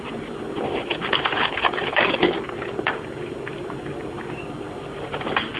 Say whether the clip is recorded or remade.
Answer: recorded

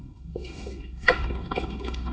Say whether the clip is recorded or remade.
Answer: remade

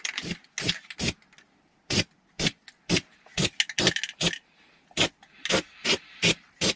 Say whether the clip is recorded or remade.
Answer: recorded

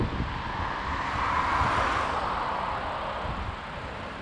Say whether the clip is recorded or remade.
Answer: recorded